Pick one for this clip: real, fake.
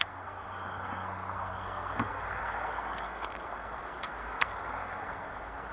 fake